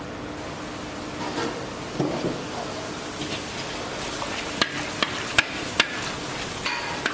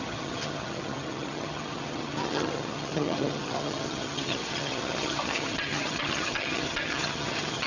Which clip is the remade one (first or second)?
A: second